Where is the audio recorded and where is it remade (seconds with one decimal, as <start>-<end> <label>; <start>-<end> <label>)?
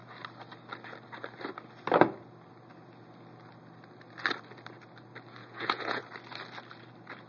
0.0-5.4 recorded; 5.4-6.0 remade; 6.0-7.3 recorded